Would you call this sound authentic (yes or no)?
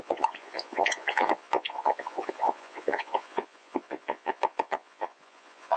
no